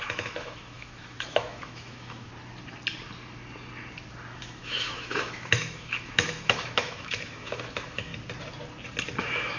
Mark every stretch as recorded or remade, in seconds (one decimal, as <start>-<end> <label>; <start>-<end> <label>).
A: 0.0-2.3 remade; 2.3-4.4 recorded; 4.4-8.1 remade; 8.1-9.2 recorded; 9.2-9.6 remade

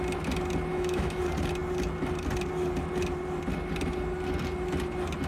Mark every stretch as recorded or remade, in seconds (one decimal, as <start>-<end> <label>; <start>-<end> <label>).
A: 0.0-0.7 recorded; 0.7-1.2 remade; 1.2-5.3 recorded

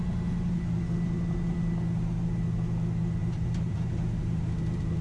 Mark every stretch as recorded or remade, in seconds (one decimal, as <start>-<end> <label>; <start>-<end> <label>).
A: 0.0-3.2 recorded; 3.2-3.9 remade; 3.9-5.0 recorded

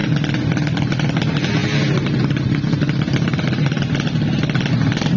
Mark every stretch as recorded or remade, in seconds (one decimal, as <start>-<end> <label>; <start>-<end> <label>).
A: 0.0-0.8 remade; 0.8-5.2 recorded

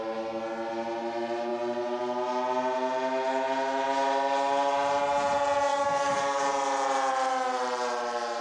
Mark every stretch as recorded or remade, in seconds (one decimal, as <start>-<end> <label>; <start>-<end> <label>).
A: 0.0-5.7 recorded; 5.7-6.5 remade; 6.5-8.4 recorded